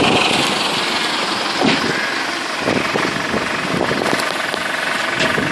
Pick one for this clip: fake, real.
real